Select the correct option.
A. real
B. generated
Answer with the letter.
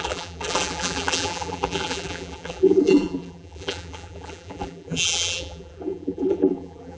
B